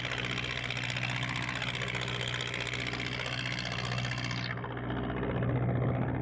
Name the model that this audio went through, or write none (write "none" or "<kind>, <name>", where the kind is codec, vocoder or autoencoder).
none